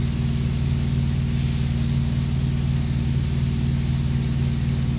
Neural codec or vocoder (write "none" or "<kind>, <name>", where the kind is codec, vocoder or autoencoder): none